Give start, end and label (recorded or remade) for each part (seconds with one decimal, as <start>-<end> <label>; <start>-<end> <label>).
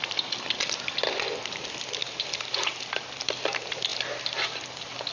0.0-5.1 recorded